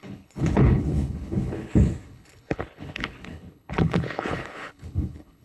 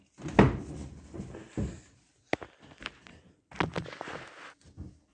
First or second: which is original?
second